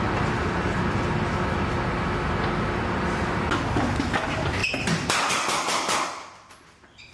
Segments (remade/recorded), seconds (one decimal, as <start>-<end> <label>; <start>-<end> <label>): 0.0-7.1 recorded